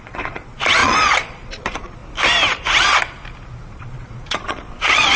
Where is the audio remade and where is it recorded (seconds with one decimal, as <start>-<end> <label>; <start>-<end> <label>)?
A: 0.0-2.0 remade; 2.0-3.7 recorded; 3.7-5.2 remade